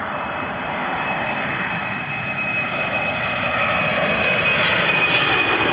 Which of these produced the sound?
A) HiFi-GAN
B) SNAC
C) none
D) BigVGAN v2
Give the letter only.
D